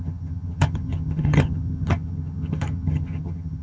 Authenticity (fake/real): fake